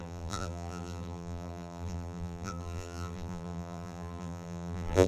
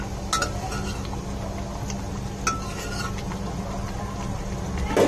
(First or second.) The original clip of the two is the second